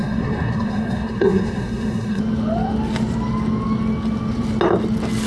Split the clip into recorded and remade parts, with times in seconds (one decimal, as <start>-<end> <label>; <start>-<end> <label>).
0.0-2.2 remade; 2.2-5.3 recorded